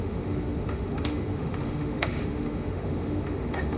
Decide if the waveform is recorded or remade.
remade